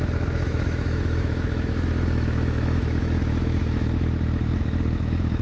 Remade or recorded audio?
remade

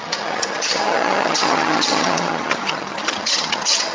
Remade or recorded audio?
remade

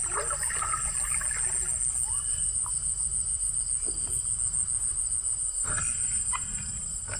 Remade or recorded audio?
recorded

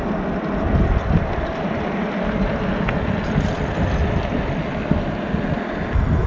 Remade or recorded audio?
recorded